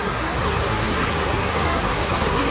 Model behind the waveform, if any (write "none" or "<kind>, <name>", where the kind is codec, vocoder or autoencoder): codec, SNAC